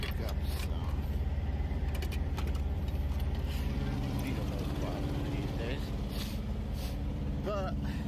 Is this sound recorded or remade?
remade